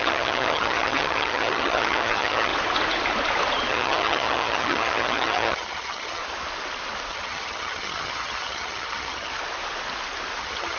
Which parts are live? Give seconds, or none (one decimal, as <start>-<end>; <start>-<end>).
2.5-3.7; 6.2-7.1; 9.3-10.4